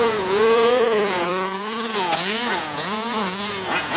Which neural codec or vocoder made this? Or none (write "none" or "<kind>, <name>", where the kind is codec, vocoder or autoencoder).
vocoder, Vocos